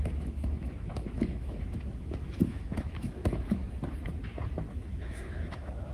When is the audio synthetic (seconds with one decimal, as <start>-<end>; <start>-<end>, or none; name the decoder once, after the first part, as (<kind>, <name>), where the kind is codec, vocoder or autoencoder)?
0.0-3.6 (autoencoder, DAC-VAE); 4.7-5.9